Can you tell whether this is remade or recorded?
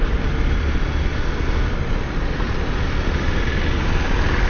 recorded